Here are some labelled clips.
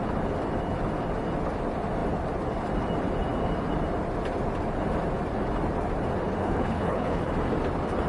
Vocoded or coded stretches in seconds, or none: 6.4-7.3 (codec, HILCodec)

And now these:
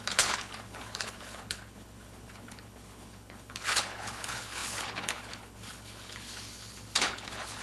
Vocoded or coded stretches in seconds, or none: 0.0-7.6 (codec, HILCodec)

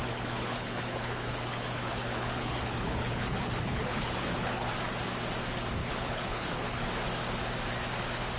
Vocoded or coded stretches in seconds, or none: 0.0-4.7 (codec, HILCodec); 5.8-6.9

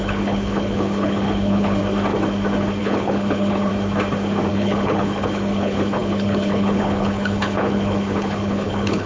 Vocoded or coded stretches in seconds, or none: 0.0-1.8 (codec, HILCodec); 2.8-3.7; 4.5-9.1

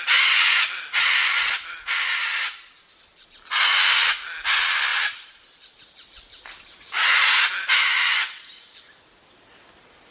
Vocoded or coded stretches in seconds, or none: none

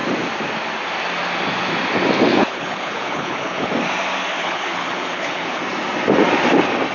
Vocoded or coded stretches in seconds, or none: 2.4-3.7 (codec, HILCodec); 4.4-5.6

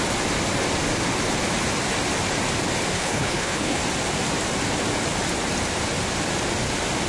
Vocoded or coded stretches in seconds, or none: 2.9-3.8 (codec, HILCodec)